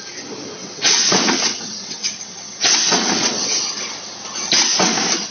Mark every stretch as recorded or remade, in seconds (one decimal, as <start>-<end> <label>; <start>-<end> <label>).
0.0-0.6 recorded; 0.6-3.6 remade; 3.6-5.3 recorded